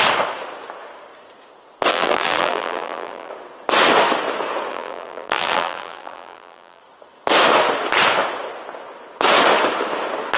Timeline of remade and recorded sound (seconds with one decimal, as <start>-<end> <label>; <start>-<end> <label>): 0.0-1.9 recorded; 1.9-3.3 remade; 3.3-4.7 recorded; 4.7-6.8 remade; 6.8-10.4 recorded